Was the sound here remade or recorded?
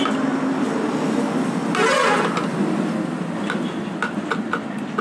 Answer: recorded